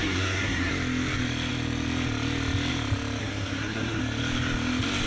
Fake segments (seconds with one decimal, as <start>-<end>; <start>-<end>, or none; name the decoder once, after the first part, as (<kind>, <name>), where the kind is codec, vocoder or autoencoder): 0.0-0.7 (codec, SNAC); 3.2-4.0

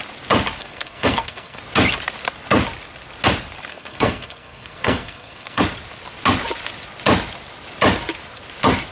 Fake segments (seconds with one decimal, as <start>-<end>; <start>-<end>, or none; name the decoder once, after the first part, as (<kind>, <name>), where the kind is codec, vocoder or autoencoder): 0.6-1.6 (codec, SNAC); 3.7-5.6

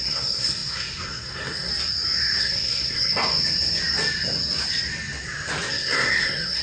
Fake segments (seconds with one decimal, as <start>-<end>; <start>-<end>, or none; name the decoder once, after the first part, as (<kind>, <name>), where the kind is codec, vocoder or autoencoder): 0.0-1.7 (codec, SNAC); 2.4-3.3; 5.7-6.6

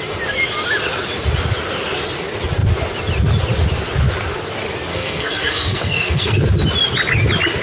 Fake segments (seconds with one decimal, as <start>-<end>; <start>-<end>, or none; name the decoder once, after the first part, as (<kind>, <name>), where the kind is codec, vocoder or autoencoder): 4.9-6.4 (codec, SNAC)

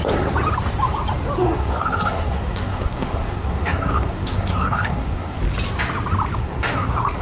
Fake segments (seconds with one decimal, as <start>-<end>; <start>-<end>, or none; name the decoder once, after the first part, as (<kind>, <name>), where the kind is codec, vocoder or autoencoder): 1.4-5.4 (codec, SNAC); 6.4-7.2

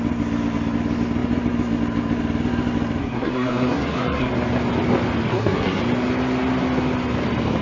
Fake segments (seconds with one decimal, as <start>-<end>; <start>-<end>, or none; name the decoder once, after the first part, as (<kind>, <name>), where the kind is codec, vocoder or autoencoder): 3.0-4.3 (codec, SNAC); 5.3-5.8